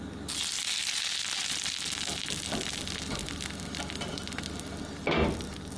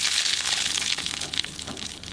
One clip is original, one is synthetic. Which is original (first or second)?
first